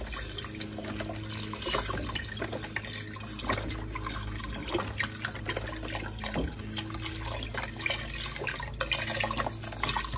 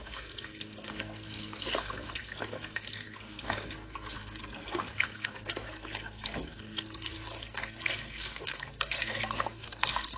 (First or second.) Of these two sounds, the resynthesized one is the second